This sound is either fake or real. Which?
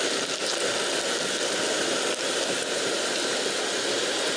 real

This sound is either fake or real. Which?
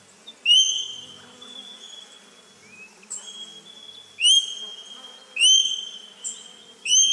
real